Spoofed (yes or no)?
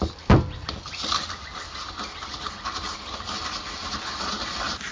no